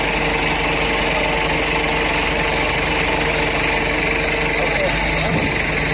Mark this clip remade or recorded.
recorded